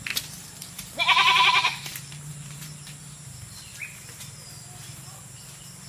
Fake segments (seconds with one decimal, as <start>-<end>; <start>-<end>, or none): none